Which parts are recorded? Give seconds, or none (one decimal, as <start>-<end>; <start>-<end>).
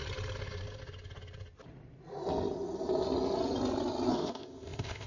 0.0-4.1